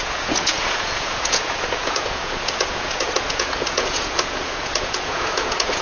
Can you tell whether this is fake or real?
fake